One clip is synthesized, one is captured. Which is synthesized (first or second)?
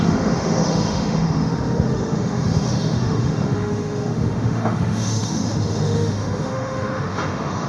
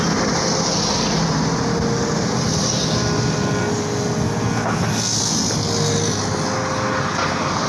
first